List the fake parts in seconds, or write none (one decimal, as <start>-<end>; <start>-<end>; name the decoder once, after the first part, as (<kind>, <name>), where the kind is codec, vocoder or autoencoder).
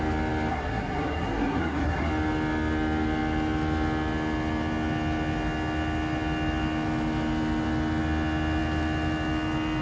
0.5-2.1 (codec, SNAC)